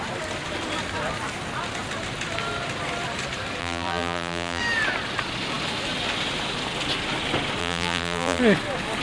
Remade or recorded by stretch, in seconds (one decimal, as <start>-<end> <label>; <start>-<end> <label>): 0.0-3.6 recorded; 3.6-4.6 remade; 4.6-7.6 recorded; 7.6-8.4 remade; 8.4-9.0 recorded